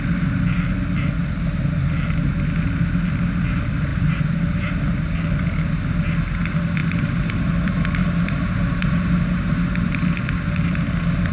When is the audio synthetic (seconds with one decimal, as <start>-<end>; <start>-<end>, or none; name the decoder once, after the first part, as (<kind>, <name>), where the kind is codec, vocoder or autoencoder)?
3.9-4.7 (vocoder, BigVGAN v2)